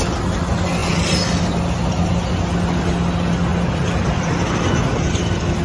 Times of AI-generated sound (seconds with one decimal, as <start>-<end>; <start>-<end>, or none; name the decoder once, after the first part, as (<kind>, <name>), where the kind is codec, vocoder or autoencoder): 0.8-1.4 (vocoder, BigVGAN v2); 3.5-5.6